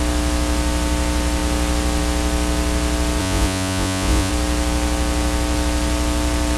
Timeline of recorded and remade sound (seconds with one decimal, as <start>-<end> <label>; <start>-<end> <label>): 0.0-3.2 recorded; 3.2-4.3 remade; 4.3-6.6 recorded